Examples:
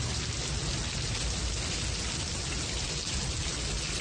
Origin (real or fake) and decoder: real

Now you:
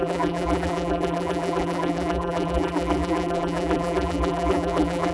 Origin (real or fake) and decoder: fake, vocoder, BigVGAN v2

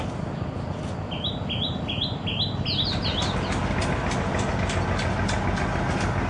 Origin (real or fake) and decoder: real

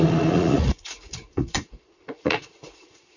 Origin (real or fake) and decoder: fake, vocoder, Vocos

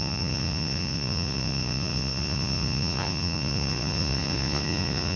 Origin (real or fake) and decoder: fake, vocoder, Vocos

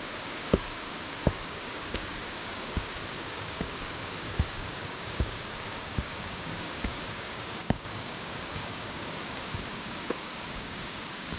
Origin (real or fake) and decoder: fake, codec, DAC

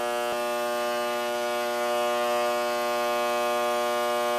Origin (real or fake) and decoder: real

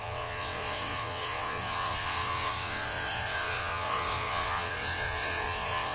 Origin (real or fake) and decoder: fake, vocoder, WaveNeXt